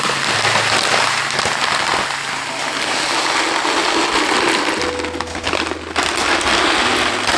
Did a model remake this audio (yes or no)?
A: no